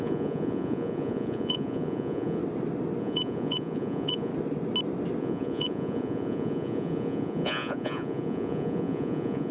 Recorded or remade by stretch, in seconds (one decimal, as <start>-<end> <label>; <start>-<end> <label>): 0.0-2.4 remade; 2.4-3.0 recorded; 3.0-4.3 remade; 4.3-5.2 recorded; 5.2-9.5 remade